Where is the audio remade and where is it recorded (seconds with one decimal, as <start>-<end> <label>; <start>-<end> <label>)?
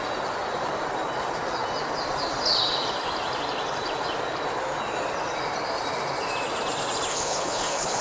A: 0.0-7.1 recorded; 7.1-8.0 remade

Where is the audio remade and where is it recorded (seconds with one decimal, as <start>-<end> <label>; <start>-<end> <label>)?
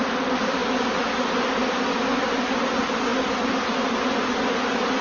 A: 0.0-5.0 recorded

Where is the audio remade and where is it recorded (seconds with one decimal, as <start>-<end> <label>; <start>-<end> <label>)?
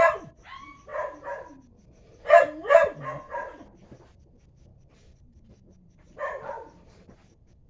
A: 0.0-2.1 recorded; 2.1-3.0 remade; 3.0-4.7 recorded; 4.7-7.7 remade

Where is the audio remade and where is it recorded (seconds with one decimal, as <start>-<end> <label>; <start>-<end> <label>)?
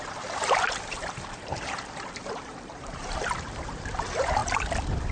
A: 0.0-4.4 remade; 4.4-5.1 recorded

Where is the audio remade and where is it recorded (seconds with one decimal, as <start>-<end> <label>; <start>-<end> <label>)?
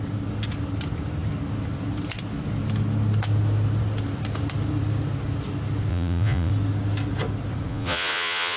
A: 0.0-5.9 recorded; 5.9-6.5 remade; 6.5-7.7 recorded; 7.7-8.6 remade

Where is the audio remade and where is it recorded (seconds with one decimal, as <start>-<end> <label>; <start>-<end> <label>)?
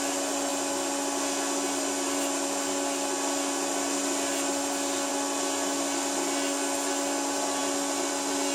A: 0.0-8.5 recorded